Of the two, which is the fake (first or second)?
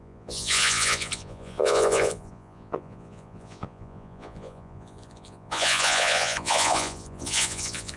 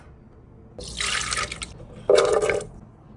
first